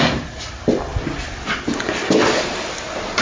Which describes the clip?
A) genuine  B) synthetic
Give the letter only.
A